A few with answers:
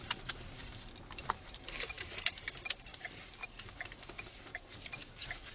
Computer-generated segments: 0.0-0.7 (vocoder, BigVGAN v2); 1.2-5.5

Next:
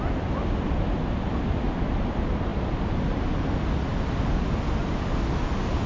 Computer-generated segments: none